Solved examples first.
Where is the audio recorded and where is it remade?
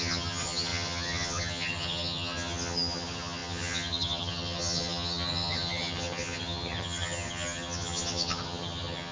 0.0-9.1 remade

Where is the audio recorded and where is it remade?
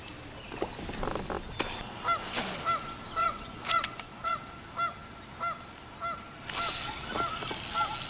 0.0-3.2 recorded; 3.2-4.4 remade; 4.4-8.1 recorded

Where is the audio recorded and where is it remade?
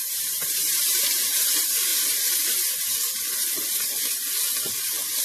0.0-1.9 remade; 1.9-5.2 recorded